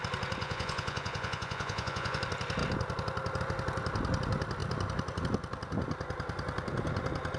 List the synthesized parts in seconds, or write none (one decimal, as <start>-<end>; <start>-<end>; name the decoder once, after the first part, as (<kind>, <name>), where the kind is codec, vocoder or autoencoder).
0.4-2.2 (vocoder, Vocos)